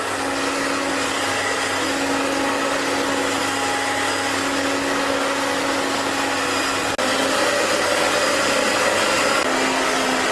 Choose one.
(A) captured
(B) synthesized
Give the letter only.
A